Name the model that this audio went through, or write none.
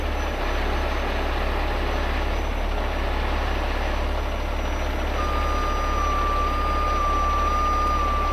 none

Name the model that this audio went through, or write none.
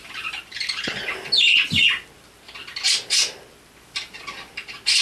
none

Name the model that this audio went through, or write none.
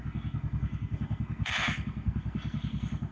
codec, SNAC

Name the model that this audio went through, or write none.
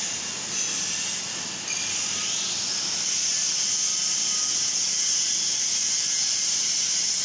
none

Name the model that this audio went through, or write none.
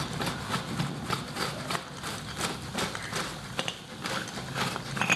none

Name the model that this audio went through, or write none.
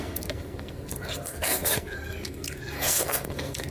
codec, SNAC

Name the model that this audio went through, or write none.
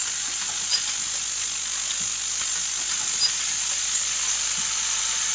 none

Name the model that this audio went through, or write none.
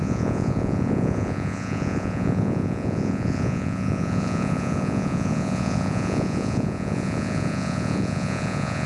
vocoder, Vocos